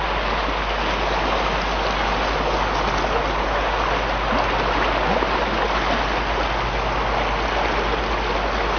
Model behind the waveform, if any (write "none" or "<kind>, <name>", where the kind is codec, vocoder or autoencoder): none